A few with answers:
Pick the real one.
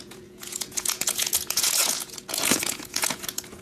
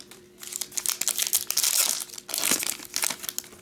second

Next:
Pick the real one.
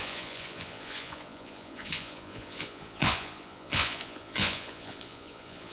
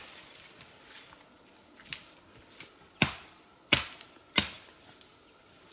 second